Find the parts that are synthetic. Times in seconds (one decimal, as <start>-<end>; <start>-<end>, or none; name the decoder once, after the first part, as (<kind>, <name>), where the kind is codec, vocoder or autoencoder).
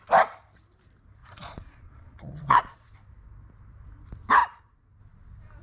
1.2-2.9 (vocoder, Vocos)